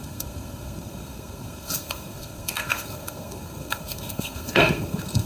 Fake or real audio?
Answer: fake